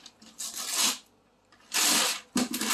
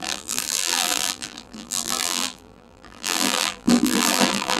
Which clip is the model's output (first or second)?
second